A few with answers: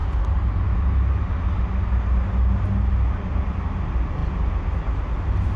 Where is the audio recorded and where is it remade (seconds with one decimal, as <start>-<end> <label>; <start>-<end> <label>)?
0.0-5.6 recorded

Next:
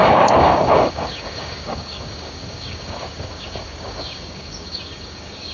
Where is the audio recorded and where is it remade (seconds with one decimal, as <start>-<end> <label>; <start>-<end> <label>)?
0.0-5.5 remade

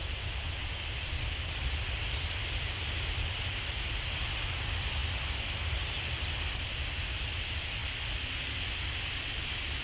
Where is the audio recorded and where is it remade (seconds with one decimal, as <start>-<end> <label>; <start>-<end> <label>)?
0.0-9.8 recorded